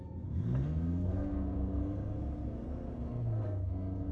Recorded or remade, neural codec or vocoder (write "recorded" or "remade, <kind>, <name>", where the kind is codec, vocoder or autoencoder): remade, codec, SNAC